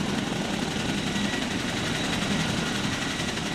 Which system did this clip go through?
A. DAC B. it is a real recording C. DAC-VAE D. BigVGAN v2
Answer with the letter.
B